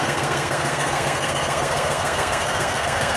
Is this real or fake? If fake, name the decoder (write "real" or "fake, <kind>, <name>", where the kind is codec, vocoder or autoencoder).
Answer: fake, codec, SNAC